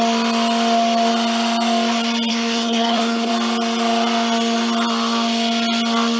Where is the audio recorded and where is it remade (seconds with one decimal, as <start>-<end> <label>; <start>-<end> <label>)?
0.0-2.3 recorded; 2.3-3.3 remade; 3.3-6.2 recorded